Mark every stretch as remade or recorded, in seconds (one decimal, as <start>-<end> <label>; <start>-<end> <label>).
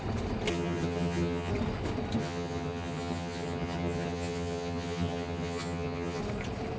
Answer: 0.0-0.5 recorded; 0.5-1.5 remade; 1.5-2.2 recorded; 2.2-6.2 remade; 6.2-6.8 recorded